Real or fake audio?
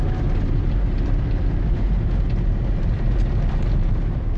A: real